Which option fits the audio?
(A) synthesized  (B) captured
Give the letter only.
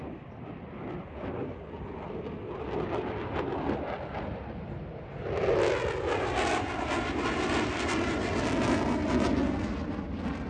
B